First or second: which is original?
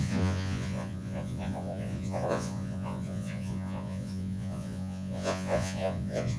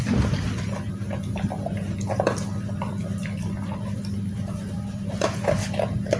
second